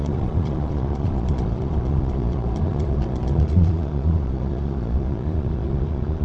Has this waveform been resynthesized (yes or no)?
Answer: yes